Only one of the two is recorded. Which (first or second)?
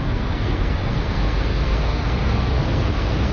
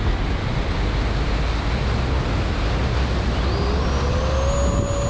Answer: second